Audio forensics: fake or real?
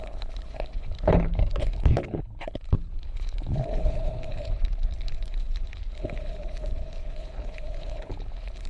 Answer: fake